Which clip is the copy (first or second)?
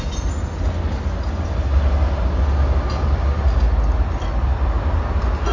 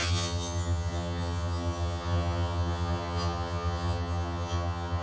second